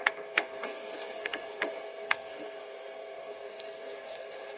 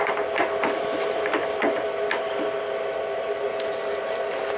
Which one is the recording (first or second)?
second